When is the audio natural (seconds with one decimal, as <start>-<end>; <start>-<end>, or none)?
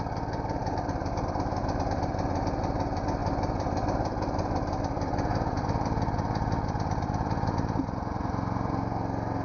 0.0-0.6; 1.2-1.6; 2.1-3.2; 7.8-9.4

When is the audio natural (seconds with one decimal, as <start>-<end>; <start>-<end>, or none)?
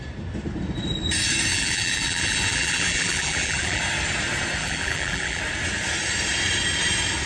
0.0-1.5; 3.8-4.6; 5.4-7.3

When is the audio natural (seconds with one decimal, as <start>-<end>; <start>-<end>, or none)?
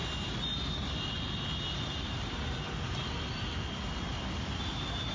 0.0-5.1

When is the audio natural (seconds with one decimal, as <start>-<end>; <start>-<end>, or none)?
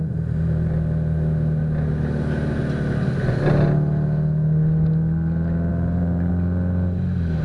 0.0-5.7; 6.3-7.4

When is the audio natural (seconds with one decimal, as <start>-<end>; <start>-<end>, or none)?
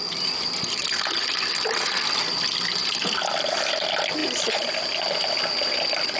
3.7-4.2; 5.4-6.2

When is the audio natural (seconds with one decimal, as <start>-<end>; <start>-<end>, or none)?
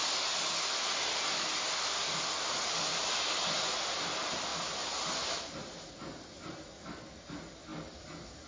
0.0-2.9; 3.6-8.5